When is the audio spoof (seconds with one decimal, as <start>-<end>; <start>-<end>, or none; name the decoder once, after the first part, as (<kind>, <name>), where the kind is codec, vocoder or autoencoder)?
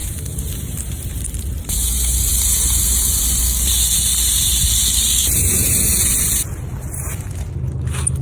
0.0-3.4 (vocoder, BigVGAN v2); 5.2-6.1